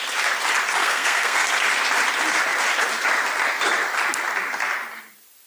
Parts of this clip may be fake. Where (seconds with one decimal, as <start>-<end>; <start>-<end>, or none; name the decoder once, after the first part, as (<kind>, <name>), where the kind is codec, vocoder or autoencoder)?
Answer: 0.8-1.4 (codec, SNAC)